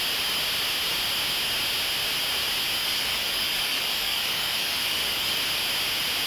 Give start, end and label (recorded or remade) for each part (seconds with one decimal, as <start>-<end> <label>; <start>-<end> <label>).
0.0-2.8 recorded; 2.8-5.4 remade; 5.4-6.3 recorded